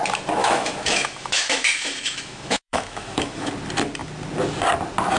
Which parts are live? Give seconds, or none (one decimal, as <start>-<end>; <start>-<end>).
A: 0.0-0.4; 3.5-5.2